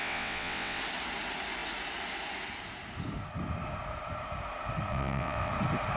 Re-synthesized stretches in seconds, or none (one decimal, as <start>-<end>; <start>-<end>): 0.0-0.8; 4.9-5.5